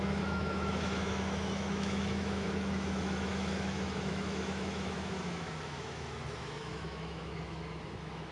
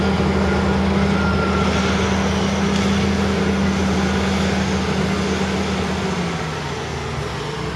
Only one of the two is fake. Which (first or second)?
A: first